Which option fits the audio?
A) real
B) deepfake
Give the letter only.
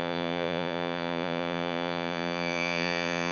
B